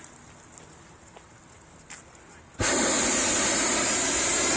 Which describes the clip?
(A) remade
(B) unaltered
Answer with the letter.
B